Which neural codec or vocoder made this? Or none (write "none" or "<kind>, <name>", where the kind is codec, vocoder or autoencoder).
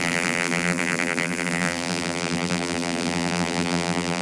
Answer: vocoder, BigVGAN v2